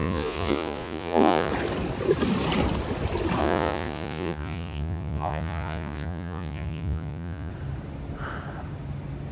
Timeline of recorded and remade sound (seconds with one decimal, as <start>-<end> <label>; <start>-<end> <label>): 0.0-1.5 remade; 1.5-3.4 recorded; 3.4-7.5 remade; 7.5-9.3 recorded